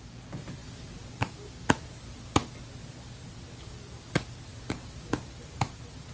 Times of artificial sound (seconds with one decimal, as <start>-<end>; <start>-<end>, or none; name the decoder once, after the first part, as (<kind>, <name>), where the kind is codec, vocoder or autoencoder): none